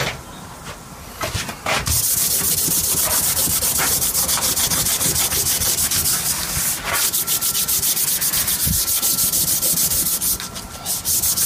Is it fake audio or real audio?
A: real